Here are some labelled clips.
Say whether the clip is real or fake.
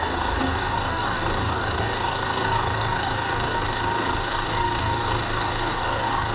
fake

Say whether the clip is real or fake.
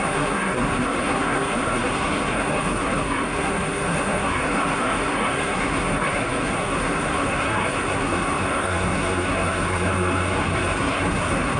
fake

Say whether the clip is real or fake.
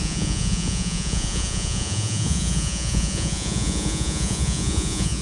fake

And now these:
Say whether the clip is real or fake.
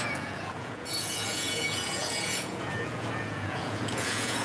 fake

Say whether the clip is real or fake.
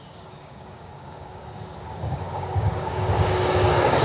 fake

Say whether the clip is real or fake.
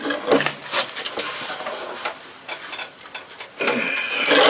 real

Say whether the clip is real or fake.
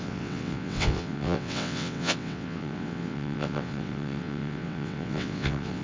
fake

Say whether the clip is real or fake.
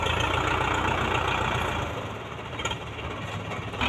real